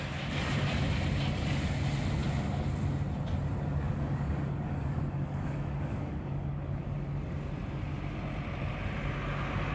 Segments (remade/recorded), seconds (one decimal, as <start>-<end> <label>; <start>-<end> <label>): 0.0-3.7 recorded; 3.7-6.8 remade; 6.8-9.7 recorded